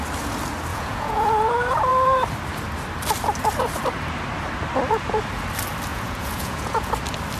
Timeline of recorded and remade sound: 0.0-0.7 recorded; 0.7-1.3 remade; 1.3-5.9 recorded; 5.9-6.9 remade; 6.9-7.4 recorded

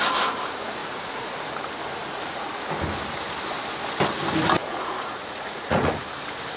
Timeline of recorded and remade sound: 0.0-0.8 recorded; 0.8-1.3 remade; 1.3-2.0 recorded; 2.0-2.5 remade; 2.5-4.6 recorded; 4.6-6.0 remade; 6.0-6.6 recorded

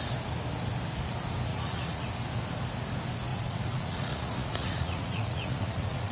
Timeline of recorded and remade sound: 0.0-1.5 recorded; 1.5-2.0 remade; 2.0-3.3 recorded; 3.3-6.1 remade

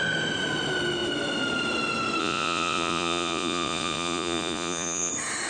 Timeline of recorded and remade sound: 0.0-2.2 recorded; 2.2-5.1 remade; 5.1-5.5 recorded

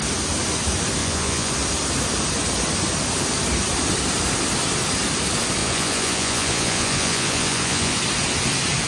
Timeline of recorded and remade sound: 0.0-1.0 recorded; 1.0-1.5 remade; 1.5-5.6 recorded; 5.6-8.0 remade; 8.0-8.9 recorded

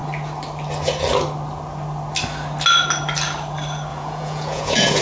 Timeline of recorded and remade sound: 0.0-3.9 recorded; 3.9-5.0 remade

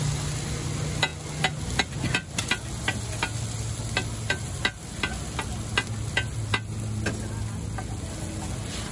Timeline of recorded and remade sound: 0.0-8.9 recorded

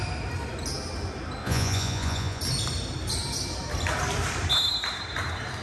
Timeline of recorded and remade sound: 0.0-1.4 recorded; 1.4-2.4 remade; 2.4-5.6 recorded